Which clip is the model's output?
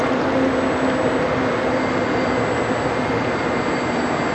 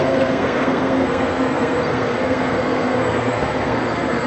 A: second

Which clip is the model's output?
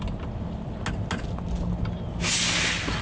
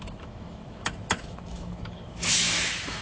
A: second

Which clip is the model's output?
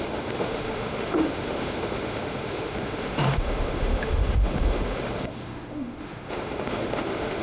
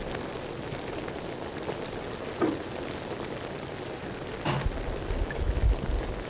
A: first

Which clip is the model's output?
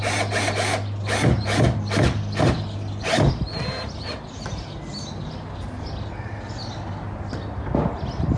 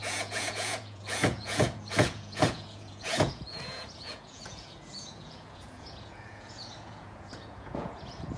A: second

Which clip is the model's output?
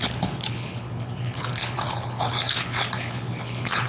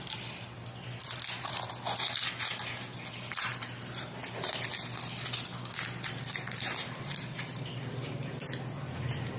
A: first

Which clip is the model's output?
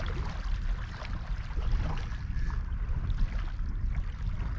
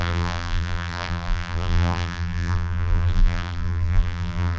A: second